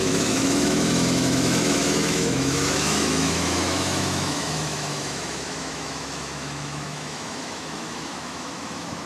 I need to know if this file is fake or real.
fake